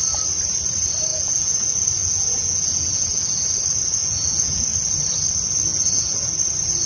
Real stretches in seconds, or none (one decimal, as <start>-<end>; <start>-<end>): 0.0-1.1; 1.6-2.0; 3.5-4.0; 4.6-5.7; 6.3-6.9

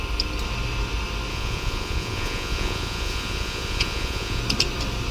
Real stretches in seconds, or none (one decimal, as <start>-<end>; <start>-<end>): 0.0-1.3; 4.4-5.1

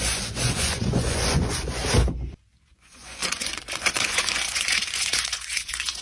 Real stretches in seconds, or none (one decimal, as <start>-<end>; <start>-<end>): 1.8-2.6

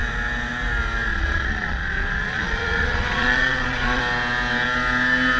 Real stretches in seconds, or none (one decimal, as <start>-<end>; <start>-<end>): 0.0-1.1; 4.0-5.4

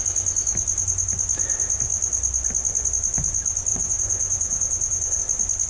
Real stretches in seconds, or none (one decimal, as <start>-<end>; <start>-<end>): 0.0-3.7; 5.2-5.7